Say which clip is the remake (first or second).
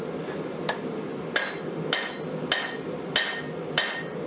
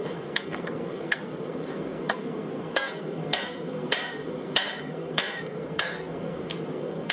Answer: second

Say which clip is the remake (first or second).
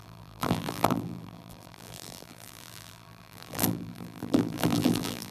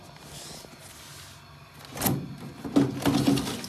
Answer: first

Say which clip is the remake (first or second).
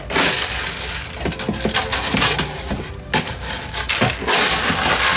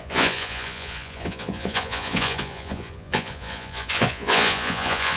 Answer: second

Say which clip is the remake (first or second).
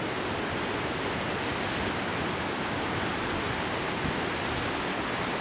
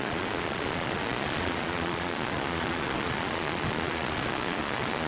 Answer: second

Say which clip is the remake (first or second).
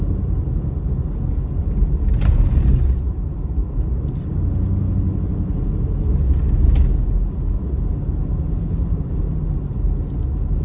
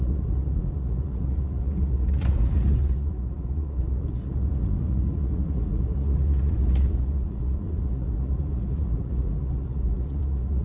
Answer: second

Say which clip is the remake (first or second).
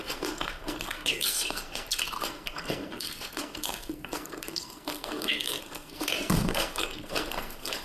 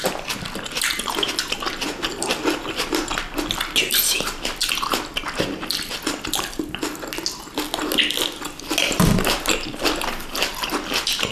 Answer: first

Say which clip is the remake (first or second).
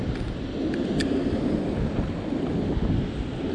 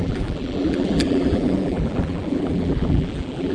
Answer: second